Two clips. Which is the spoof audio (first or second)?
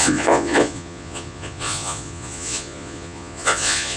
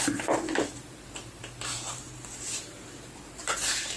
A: first